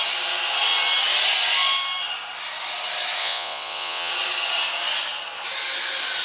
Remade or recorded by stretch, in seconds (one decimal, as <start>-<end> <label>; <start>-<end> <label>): 0.0-3.2 recorded; 3.2-4.1 remade; 4.1-6.2 recorded